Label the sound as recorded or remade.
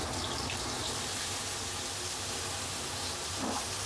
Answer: recorded